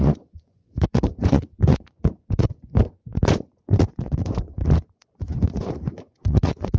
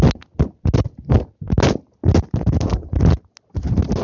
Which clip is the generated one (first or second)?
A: first